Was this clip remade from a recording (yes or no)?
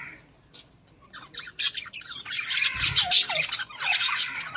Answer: no